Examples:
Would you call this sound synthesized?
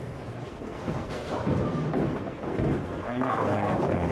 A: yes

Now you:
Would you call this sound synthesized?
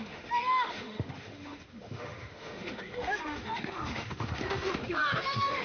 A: yes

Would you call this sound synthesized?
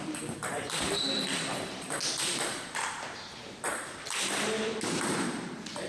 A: yes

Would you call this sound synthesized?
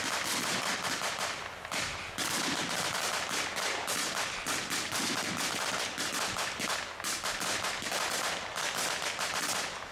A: no